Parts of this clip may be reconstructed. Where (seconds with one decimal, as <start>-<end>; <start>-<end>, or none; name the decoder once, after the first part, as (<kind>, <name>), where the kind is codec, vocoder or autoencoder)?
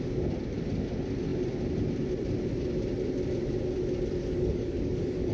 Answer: 4.2-5.3 (codec, DAC)